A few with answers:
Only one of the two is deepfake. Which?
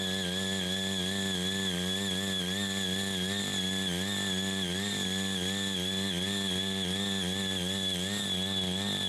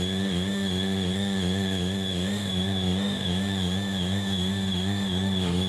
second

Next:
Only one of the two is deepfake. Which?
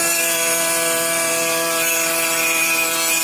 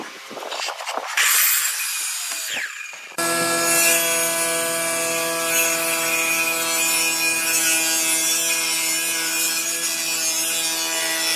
first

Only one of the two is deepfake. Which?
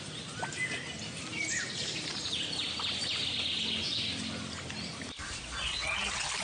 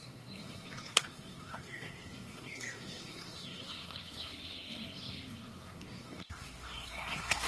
second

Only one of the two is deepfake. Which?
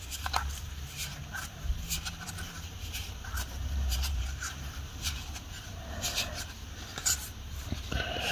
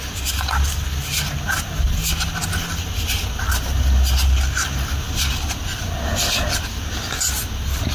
first